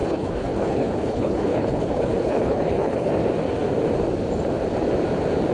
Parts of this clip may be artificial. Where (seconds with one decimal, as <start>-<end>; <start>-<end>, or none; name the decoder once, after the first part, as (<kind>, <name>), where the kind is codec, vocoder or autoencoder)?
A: 0.0-3.1 (codec, HILCodec)